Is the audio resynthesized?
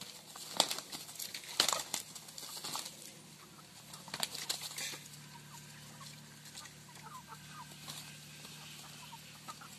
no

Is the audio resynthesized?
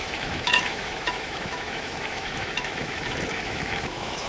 yes